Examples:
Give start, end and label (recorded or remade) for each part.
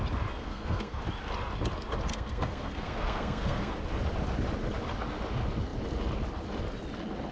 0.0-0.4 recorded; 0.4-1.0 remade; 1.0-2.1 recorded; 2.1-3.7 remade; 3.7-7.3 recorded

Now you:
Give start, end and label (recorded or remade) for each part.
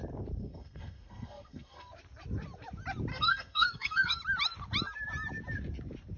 0.0-0.4 recorded; 0.4-1.9 remade; 1.9-3.1 recorded; 3.1-4.2 remade; 4.2-6.2 recorded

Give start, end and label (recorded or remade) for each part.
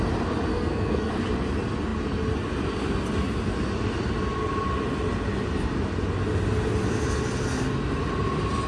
0.0-0.5 recorded; 0.5-1.1 remade; 1.1-8.7 recorded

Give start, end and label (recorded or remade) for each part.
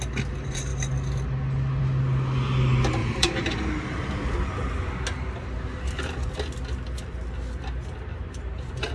0.0-3.0 recorded; 3.0-4.1 remade; 4.1-8.1 recorded; 8.1-8.9 remade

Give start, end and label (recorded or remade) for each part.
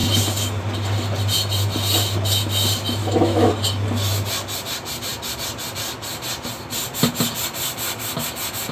0.0-3.0 recorded; 3.0-3.5 remade; 3.5-8.7 recorded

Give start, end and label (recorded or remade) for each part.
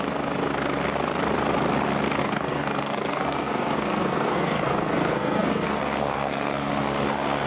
0.0-2.2 recorded; 2.2-6.7 remade; 6.7-7.5 recorded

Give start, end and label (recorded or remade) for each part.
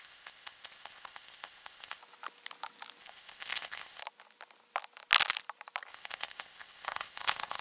0.0-2.0 remade; 2.0-3.0 recorded; 3.0-4.0 remade; 4.0-5.9 recorded; 5.9-7.6 remade